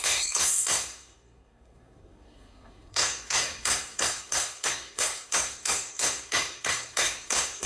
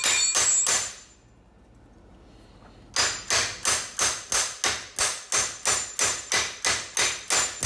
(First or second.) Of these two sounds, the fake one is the first